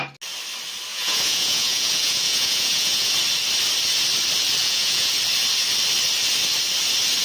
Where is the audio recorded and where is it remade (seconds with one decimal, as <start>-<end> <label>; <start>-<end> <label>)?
0.0-0.9 recorded; 0.9-3.1 remade; 3.1-4.6 recorded; 4.6-5.1 remade; 5.1-7.2 recorded